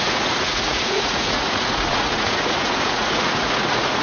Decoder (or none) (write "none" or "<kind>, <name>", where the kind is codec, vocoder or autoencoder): vocoder, Vocos